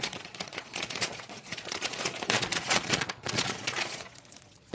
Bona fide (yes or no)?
no